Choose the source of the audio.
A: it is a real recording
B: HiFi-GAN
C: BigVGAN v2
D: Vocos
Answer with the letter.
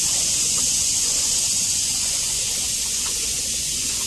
D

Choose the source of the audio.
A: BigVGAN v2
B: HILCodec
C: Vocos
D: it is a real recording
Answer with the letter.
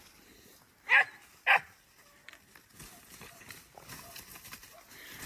D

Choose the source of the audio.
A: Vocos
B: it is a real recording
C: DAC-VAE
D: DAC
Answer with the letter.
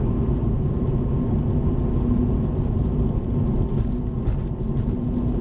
B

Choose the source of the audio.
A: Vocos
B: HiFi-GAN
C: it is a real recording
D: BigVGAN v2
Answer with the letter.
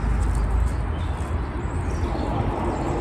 C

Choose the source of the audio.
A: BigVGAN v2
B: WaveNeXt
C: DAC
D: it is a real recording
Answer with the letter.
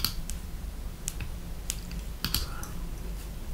D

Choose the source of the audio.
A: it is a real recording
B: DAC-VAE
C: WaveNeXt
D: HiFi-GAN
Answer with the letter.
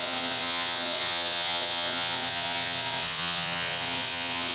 C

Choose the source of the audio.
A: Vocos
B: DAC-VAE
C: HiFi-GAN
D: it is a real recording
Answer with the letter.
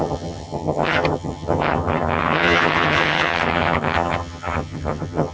C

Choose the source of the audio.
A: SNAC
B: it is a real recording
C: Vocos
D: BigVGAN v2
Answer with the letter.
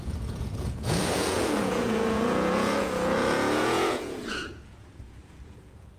C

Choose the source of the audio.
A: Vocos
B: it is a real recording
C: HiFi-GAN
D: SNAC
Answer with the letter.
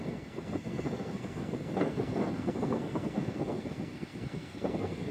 D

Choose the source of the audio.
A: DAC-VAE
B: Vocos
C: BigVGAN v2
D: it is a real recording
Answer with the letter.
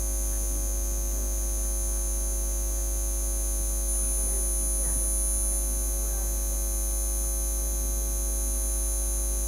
D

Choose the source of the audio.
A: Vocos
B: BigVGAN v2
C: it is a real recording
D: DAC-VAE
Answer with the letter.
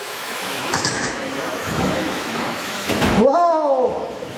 D